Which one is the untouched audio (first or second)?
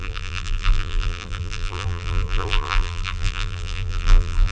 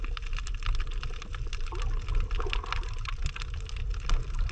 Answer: second